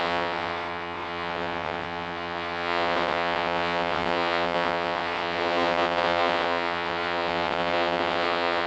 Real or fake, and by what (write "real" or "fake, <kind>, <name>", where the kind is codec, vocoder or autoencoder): fake, vocoder, WaveNeXt